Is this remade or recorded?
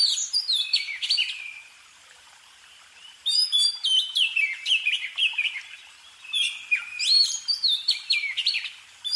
remade